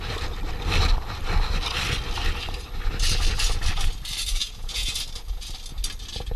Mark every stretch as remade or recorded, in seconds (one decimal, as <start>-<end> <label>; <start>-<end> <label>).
0.0-4.4 recorded; 4.4-4.9 remade; 4.9-6.4 recorded